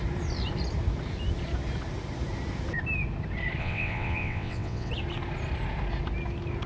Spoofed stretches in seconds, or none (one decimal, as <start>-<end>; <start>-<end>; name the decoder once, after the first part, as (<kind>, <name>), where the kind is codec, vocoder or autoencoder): 3.6-4.9 (vocoder, WaveNeXt)